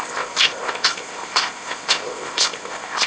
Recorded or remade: remade